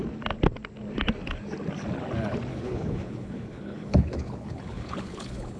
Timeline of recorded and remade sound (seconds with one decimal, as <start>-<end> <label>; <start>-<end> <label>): 0.0-2.5 recorded; 2.5-5.6 remade